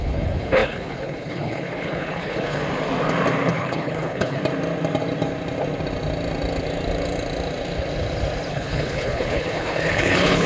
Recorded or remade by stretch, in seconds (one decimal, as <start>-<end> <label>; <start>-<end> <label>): 0.0-2.6 remade; 2.6-3.5 recorded; 3.5-4.4 remade; 4.4-8.5 recorded; 8.5-10.5 remade